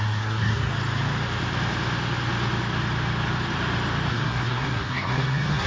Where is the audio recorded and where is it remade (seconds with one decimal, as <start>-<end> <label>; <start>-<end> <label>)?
0.0-0.7 remade; 0.7-4.1 recorded; 4.1-5.7 remade